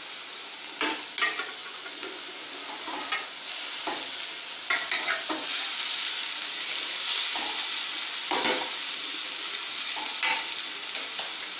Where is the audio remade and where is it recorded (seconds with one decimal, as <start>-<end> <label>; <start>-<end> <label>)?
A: 0.0-1.6 recorded; 1.6-2.3 remade; 2.3-11.6 recorded